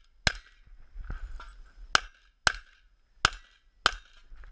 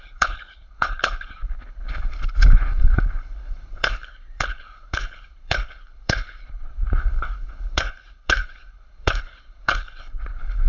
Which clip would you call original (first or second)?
first